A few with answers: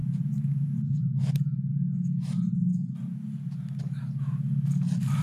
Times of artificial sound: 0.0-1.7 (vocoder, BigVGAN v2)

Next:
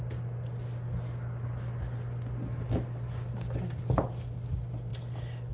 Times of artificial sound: none

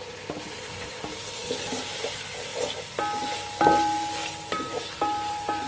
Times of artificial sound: 4.2-5.7 (vocoder, BigVGAN v2)

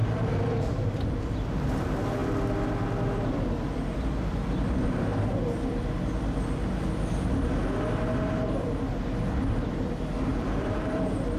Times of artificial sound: 0.0-1.2 (vocoder, BigVGAN v2); 10.3-11.0

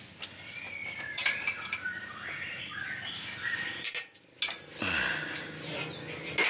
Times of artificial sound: 0.8-2.6 (vocoder, BigVGAN v2)

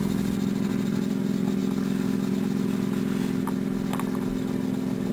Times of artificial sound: none

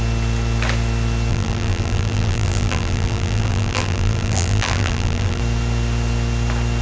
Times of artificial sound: 1.3-5.4 (vocoder, BigVGAN v2)